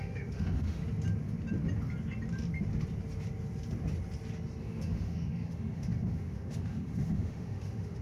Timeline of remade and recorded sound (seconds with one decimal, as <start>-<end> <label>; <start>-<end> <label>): 0.0-0.8 remade; 0.8-4.6 recorded; 4.6-8.0 remade